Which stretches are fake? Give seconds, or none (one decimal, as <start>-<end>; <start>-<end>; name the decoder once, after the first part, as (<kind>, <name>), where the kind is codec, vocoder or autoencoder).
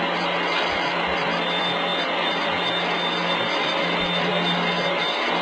none